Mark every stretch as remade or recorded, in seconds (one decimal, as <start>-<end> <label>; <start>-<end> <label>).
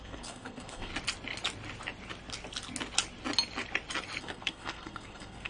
0.0-0.9 remade; 0.9-4.2 recorded; 4.2-5.5 remade